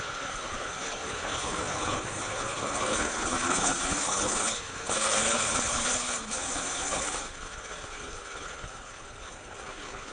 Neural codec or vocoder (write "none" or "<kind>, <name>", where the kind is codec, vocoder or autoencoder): codec, HILCodec